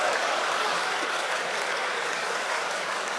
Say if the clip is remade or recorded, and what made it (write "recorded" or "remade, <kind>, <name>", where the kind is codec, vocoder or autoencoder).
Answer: remade, codec, DAC